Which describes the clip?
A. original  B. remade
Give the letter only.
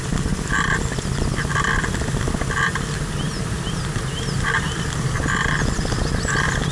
A